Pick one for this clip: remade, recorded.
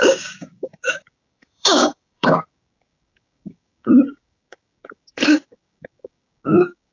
remade